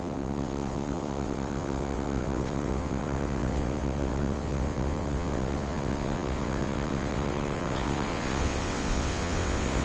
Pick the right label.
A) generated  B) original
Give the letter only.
A